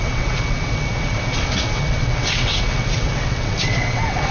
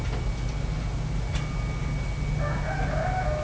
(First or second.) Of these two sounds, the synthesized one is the first